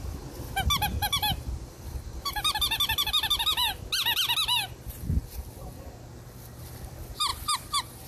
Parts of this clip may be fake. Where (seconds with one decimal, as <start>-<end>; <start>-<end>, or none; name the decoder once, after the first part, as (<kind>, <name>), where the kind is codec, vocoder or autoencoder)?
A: 0.9-3.7 (vocoder, BigVGAN v2); 7.3-8.1